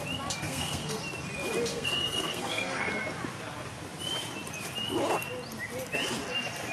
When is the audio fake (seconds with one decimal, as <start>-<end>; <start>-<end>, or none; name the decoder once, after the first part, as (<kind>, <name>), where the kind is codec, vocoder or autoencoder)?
0.4-1.0 (codec, SNAC); 1.7-2.9